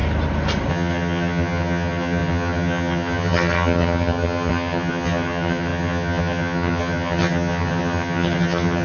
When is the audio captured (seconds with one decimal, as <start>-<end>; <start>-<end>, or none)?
0.0-0.7

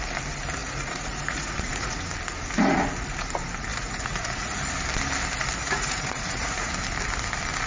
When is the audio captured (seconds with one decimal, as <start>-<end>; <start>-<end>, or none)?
0.0-0.6; 2.0-3.7; 4.6-5.6; 6.7-7.7

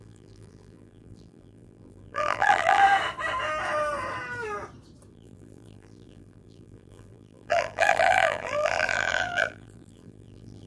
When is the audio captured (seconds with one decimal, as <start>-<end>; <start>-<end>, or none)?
2.8-5.1

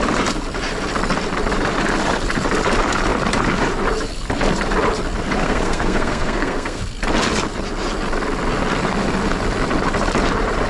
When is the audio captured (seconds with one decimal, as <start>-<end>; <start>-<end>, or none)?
0.0-5.4; 6.8-10.7